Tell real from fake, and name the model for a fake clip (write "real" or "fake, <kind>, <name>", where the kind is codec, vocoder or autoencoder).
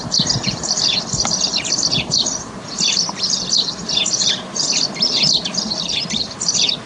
fake, vocoder, BigVGAN v2